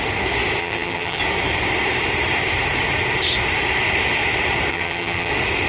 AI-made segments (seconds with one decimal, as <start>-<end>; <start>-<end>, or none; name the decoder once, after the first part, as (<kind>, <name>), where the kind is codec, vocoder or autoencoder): 0.6-1.2 (vocoder, HiFi-GAN); 4.7-5.3